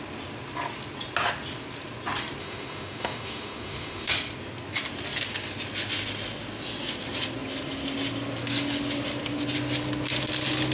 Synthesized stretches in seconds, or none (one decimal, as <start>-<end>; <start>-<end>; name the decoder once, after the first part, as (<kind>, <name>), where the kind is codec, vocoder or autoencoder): 2.4-4.1 (autoencoder, DAC-VAE)